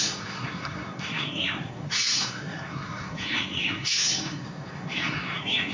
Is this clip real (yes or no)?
no